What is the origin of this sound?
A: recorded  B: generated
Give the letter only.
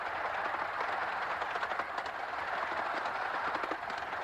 A